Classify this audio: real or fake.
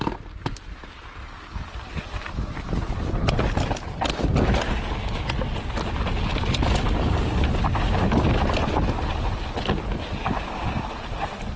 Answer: real